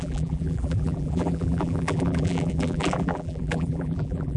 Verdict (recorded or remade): remade